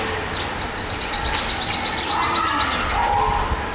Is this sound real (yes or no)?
yes